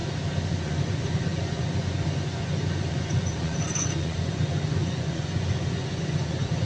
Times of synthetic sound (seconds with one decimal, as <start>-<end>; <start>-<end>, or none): 0.5-6.7